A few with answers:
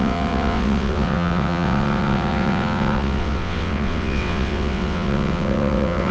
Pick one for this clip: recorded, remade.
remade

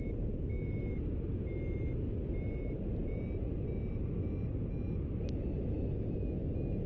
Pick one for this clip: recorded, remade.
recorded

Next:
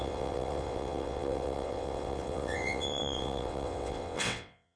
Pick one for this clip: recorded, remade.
remade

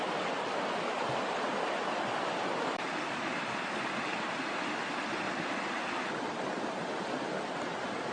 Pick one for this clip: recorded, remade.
recorded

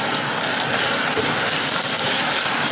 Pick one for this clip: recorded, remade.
recorded